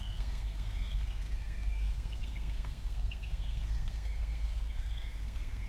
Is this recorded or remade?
remade